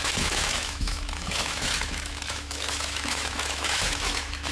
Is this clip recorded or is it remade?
remade